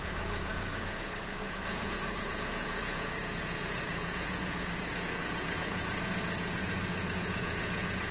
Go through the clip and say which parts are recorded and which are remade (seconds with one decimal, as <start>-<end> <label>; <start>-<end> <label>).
0.0-8.1 remade